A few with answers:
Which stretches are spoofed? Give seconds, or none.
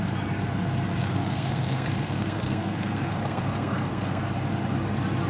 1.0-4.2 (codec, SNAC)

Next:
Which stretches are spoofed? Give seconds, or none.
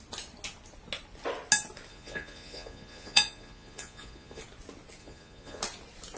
1.9-4.4 (vocoder, Vocos); 5.0-5.6